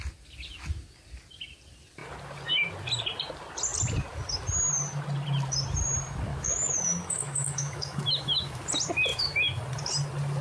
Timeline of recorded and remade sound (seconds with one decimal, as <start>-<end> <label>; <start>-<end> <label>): 0.0-6.3 recorded; 6.3-8.6 remade; 8.6-9.1 recorded; 9.1-9.6 remade; 9.6-10.4 recorded